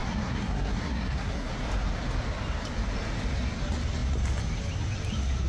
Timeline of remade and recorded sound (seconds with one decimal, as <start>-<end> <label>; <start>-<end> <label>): 0.0-1.5 remade; 1.5-5.5 recorded